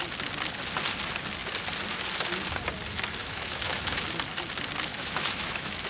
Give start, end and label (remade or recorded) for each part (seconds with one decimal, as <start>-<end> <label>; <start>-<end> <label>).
0.0-3.2 recorded; 3.2-4.0 remade; 4.0-4.9 recorded; 4.9-5.9 remade